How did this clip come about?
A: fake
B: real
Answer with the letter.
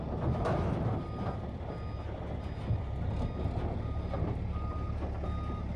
B